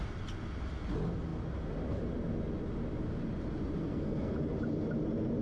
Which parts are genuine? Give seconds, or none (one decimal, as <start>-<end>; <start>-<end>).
0.0-3.8; 4.3-5.4